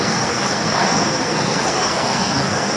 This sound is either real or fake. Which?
fake